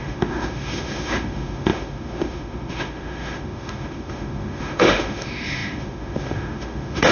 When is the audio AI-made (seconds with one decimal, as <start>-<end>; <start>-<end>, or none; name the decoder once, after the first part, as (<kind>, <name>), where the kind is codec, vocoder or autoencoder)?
0.0-7.1 (autoencoder, DAC-VAE)